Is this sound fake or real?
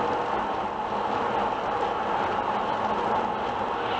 real